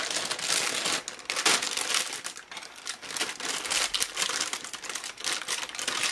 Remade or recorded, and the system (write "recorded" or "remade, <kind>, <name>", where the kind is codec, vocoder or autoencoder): recorded